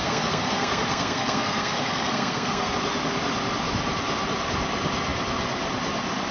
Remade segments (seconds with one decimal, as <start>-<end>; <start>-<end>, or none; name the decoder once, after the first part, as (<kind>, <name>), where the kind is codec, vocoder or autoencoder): 0.0-2.7 (codec, SNAC)